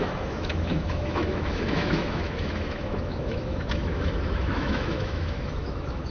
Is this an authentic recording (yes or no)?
no